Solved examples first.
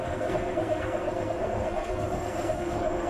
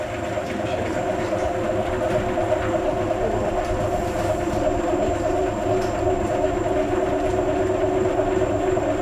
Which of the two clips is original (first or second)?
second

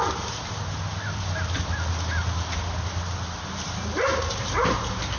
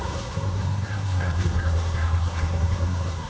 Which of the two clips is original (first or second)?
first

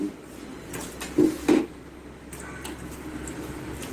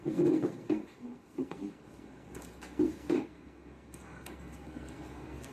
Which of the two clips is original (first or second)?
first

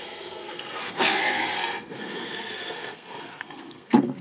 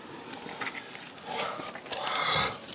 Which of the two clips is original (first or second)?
second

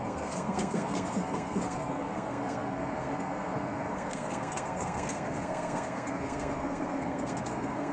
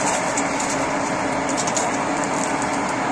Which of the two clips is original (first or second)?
second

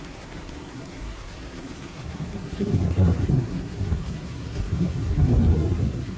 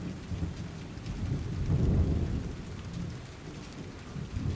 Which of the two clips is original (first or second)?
second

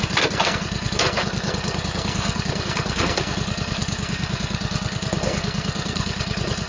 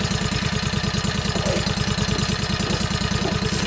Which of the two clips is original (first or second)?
second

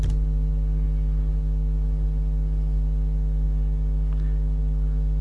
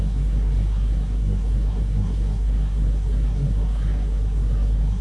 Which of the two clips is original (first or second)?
first